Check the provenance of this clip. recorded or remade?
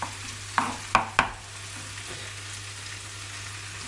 recorded